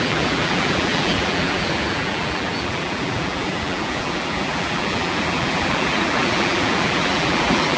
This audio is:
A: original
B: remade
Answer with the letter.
B